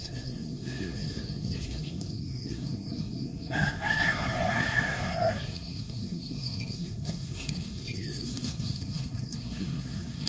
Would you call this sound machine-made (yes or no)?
yes